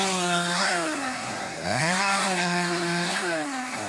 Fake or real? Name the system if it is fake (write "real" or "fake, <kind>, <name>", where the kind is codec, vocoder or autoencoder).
fake, codec, SNAC